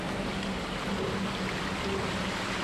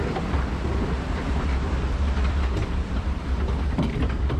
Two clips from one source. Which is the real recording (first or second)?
first